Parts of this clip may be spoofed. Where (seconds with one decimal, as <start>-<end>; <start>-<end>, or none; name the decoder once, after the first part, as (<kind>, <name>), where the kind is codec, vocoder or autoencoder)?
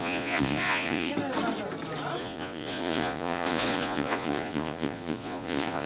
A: 0.0-1.1 (vocoder, Vocos); 2.2-5.9